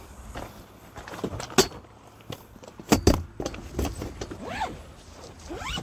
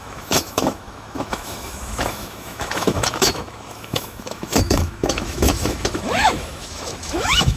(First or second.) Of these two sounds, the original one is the first